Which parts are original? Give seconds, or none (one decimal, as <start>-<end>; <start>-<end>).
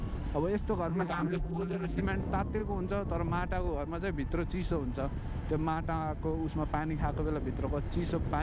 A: 0.0-0.9; 2.0-8.4